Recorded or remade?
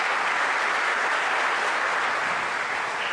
recorded